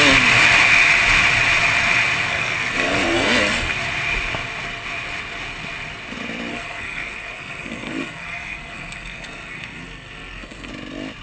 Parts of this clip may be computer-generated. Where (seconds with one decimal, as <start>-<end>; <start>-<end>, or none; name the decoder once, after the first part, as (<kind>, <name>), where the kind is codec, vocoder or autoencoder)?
2.3-3.7 (codec, SNAC); 6.5-10.7